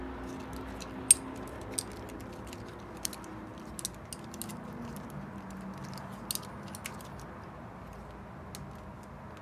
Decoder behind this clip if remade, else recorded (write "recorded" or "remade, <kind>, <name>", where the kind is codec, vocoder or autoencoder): recorded